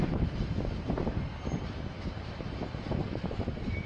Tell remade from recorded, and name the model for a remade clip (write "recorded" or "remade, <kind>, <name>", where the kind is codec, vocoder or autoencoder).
remade, vocoder, BigVGAN v2